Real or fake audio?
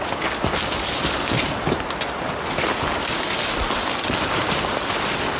real